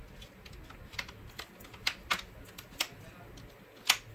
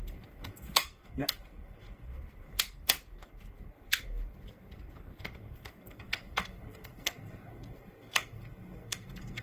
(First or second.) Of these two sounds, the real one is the first